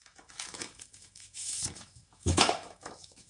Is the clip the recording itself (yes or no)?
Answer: no